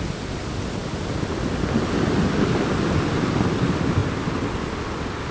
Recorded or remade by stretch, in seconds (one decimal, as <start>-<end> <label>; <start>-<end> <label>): 0.0-5.3 recorded